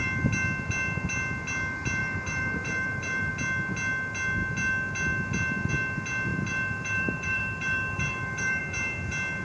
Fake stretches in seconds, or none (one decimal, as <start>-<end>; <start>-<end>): 2.0-3.3; 6.3-8.6